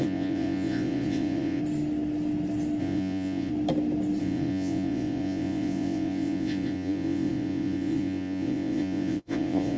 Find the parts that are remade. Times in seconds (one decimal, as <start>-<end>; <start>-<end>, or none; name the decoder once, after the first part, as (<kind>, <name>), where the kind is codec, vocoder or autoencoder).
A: 0.0-1.6 (vocoder, Vocos); 2.8-3.5; 4.2-9.8